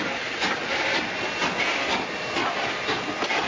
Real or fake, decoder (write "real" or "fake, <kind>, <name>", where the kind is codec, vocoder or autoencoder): real